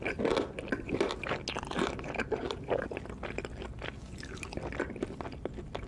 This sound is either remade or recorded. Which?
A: recorded